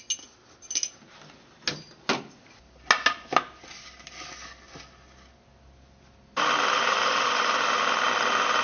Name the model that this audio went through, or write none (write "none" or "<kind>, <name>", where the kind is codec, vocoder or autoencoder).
none